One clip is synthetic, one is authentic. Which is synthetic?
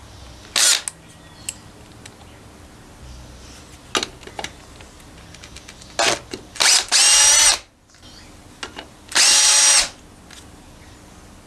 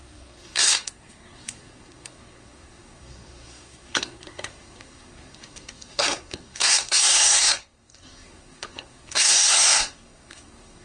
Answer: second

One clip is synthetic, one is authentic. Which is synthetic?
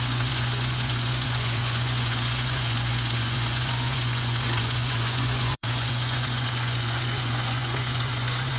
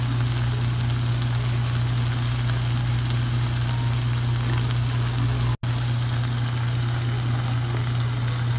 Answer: first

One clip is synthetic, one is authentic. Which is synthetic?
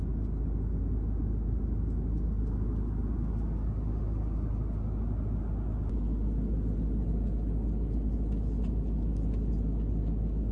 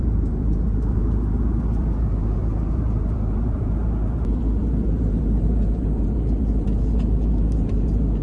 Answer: second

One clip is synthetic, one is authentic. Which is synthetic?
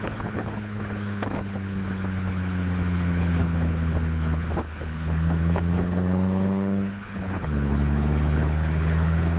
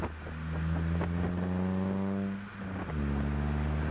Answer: first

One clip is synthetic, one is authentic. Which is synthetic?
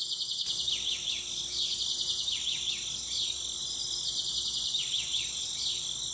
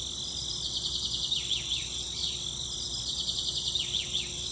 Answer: second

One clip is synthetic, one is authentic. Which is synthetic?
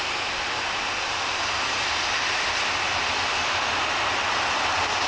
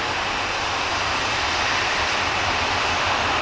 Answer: second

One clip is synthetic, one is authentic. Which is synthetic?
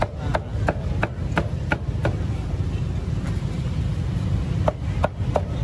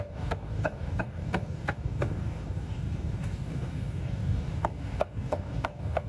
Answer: second